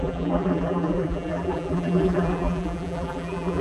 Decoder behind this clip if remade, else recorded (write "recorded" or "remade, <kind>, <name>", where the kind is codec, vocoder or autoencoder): remade, vocoder, BigVGAN v2